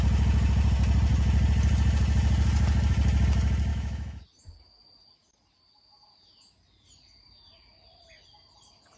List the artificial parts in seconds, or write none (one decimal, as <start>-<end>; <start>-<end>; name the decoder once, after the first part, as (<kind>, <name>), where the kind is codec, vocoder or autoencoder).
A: 3.7-4.2 (autoencoder, DAC-VAE)